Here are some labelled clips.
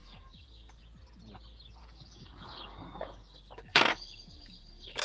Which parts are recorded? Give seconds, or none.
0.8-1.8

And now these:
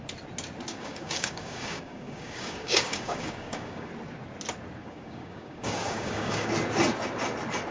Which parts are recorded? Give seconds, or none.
0.0-0.7; 3.9-4.8; 6.5-7.7